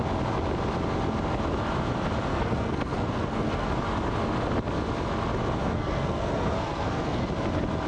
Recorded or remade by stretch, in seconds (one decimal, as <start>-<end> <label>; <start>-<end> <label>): 0.0-2.3 recorded; 2.3-3.7 remade; 3.7-5.6 recorded; 5.6-7.3 remade; 7.3-7.9 recorded